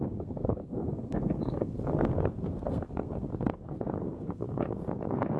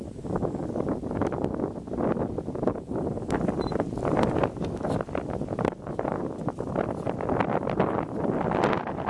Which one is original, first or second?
second